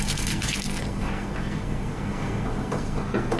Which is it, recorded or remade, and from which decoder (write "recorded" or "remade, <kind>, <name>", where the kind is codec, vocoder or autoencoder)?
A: remade, codec, SNAC